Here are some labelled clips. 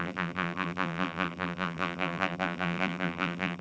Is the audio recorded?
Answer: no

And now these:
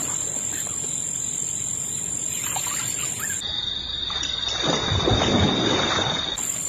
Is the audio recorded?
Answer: no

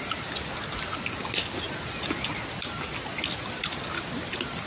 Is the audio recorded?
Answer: yes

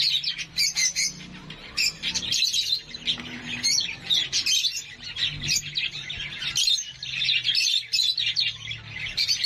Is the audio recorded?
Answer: yes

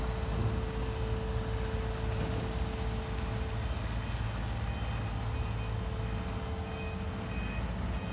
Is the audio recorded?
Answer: yes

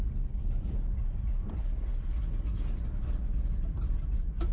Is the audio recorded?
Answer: no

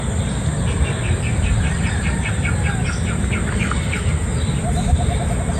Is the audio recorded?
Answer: yes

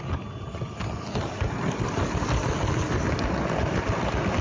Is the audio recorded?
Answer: yes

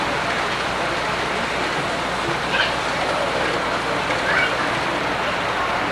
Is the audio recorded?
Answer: yes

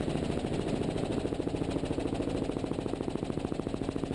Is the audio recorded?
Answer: yes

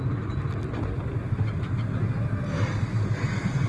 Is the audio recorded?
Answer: yes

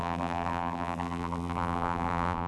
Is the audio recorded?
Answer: no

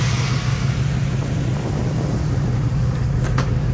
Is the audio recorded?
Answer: no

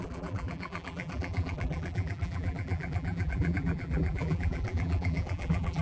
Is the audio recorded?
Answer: no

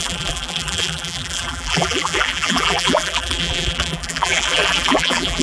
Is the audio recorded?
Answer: no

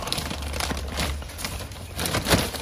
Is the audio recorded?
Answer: no